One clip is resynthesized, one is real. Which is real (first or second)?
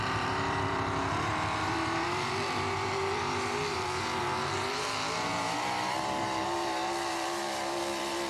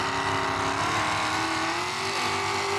second